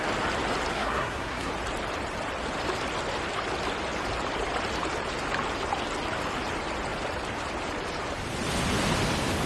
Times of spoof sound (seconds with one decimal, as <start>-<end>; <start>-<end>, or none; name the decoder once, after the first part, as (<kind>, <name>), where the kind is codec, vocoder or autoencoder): 0.7-1.5 (codec, SNAC)